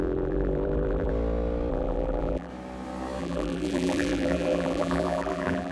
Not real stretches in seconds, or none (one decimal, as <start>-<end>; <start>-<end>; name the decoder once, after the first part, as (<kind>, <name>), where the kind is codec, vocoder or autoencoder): 0.0-1.1 (vocoder, BigVGAN v2); 1.7-2.5; 3.2-5.7